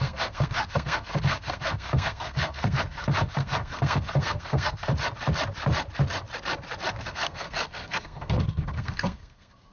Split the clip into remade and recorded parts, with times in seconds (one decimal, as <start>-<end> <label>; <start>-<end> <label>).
0.0-4.9 remade; 4.9-7.0 recorded; 7.0-9.7 remade